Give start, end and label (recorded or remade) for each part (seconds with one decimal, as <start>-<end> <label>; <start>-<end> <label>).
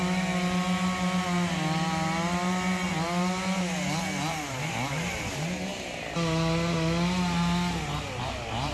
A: 0.0-8.7 recorded